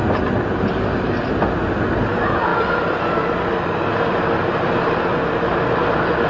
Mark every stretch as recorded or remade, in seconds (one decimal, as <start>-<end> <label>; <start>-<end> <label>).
0.0-1.8 remade; 1.8-2.5 recorded; 2.5-6.3 remade